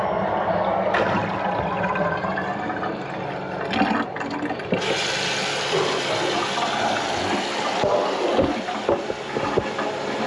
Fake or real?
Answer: real